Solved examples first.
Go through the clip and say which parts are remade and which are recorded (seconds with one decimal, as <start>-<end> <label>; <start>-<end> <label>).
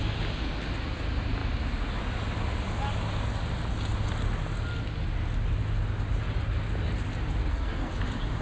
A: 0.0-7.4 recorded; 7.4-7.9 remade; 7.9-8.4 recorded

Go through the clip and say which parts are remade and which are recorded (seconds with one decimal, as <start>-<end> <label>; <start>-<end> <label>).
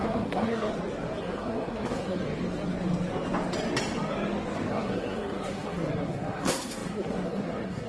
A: 0.0-0.7 remade; 0.7-1.2 recorded; 1.2-2.2 remade; 2.2-4.7 recorded; 4.7-7.9 remade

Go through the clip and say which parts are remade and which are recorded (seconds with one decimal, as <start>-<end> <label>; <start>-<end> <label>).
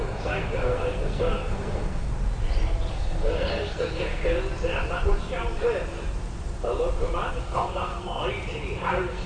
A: 0.0-2.1 remade; 2.1-2.9 recorded; 2.9-4.2 remade; 4.2-7.3 recorded; 7.3-8.2 remade; 8.2-8.9 recorded; 8.9-9.3 remade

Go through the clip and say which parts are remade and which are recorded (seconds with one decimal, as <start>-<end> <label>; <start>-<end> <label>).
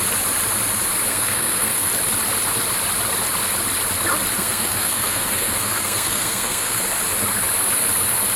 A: 0.0-1.1 recorded; 1.1-1.9 remade; 1.9-4.4 recorded; 4.4-6.8 remade; 6.8-8.4 recorded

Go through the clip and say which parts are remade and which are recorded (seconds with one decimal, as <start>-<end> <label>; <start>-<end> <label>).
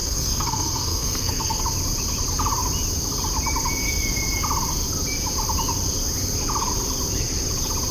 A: 0.0-1.6 remade; 1.6-7.9 recorded